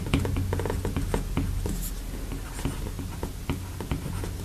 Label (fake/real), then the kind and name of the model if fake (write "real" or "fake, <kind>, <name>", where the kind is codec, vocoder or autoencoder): real